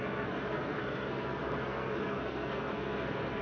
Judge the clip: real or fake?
fake